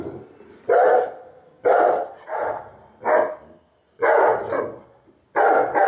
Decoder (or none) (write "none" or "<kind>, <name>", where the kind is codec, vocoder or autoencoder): none